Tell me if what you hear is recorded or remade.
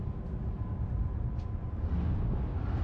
recorded